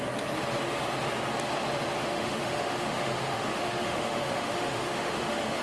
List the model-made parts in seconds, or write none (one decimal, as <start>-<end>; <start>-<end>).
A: 2.1-5.6